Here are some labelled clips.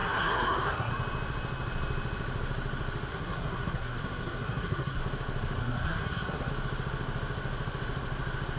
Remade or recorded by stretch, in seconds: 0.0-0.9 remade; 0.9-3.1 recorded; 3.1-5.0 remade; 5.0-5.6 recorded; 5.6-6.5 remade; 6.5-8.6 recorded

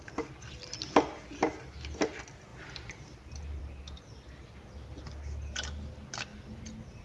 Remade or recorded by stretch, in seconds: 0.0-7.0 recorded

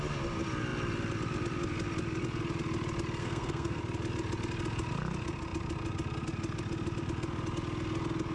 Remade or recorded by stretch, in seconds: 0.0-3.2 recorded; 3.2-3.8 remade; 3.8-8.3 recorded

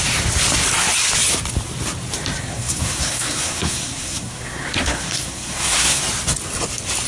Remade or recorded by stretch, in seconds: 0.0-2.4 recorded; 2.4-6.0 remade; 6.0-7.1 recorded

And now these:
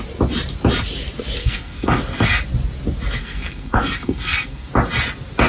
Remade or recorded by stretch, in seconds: 0.0-1.4 recorded; 1.4-2.0 remade; 2.0-3.2 recorded; 3.2-4.7 remade; 4.7-5.5 recorded

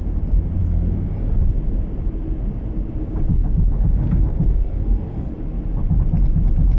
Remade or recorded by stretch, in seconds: 0.0-0.6 recorded; 0.6-1.5 remade; 1.5-3.3 recorded; 3.3-5.3 remade; 5.3-6.8 recorded

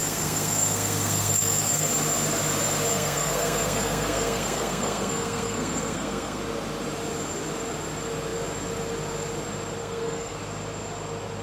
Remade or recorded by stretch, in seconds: 0.0-1.9 remade; 1.9-2.9 recorded; 2.9-6.4 remade; 6.4-9.8 recorded; 9.8-10.4 remade; 10.4-11.4 recorded